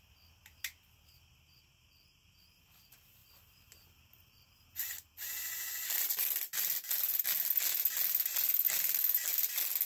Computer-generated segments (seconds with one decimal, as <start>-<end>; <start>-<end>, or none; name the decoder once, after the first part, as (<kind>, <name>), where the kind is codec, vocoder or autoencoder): 3.2-7.2 (vocoder, BigVGAN v2)